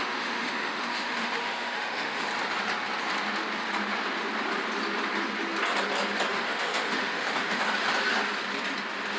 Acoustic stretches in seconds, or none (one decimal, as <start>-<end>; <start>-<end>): 2.3-6.3; 7.6-9.2